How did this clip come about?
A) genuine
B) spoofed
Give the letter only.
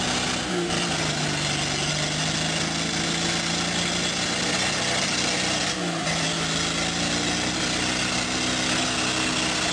A